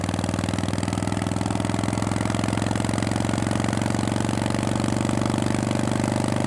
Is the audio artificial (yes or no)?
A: no